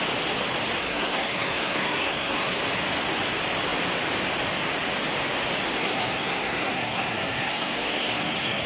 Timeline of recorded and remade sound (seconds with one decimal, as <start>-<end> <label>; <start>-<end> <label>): 0.0-0.8 recorded; 0.8-2.6 remade; 2.6-5.7 recorded; 5.7-8.7 remade